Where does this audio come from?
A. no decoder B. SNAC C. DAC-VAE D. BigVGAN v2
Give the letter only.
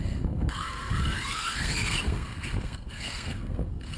B